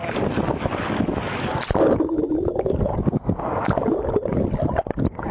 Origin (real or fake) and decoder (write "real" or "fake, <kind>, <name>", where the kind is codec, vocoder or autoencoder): real